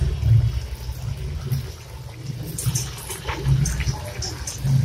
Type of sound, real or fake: real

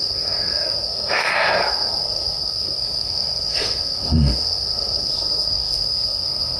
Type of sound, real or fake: fake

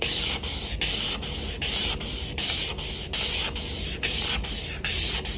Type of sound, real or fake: real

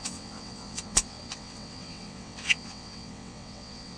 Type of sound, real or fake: fake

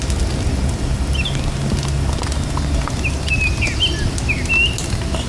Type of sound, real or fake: real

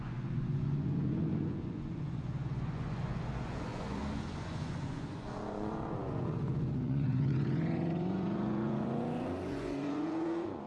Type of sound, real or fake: fake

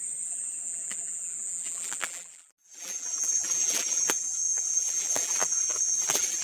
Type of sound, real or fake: fake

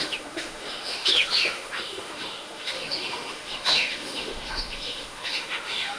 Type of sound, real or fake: fake